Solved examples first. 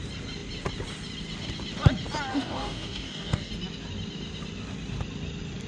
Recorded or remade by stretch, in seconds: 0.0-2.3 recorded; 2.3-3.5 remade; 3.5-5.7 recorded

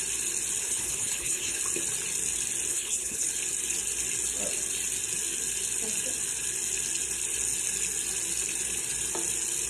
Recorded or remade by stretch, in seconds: 0.0-0.6 recorded; 0.6-1.6 remade; 1.6-2.7 recorded; 2.7-3.3 remade; 3.3-9.7 recorded

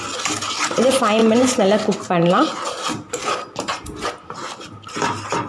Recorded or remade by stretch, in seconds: 0.0-1.2 recorded; 1.2-4.5 remade; 4.5-5.5 recorded

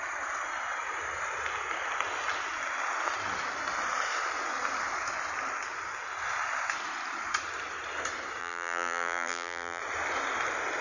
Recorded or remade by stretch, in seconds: 0.0-8.4 recorded; 8.4-9.8 remade; 9.8-10.8 recorded

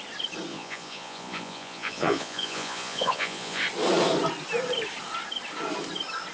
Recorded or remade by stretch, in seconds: 0.0-0.5 recorded; 0.5-3.6 remade; 3.6-6.3 recorded

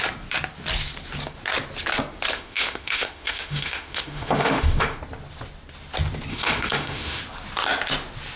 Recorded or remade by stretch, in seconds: 0.0-2.3 recorded; 2.3-5.0 remade; 5.0-6.3 recorded; 6.3-7.2 remade; 7.2-8.4 recorded